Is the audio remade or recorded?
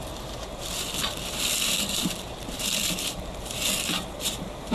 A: remade